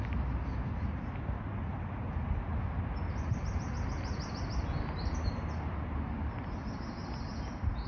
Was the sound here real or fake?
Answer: real